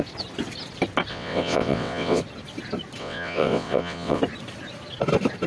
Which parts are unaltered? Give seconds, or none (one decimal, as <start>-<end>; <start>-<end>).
0.0-1.1; 2.2-3.0; 4.2-5.5